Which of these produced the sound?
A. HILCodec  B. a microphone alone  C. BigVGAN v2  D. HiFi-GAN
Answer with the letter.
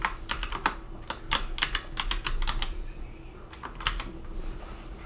B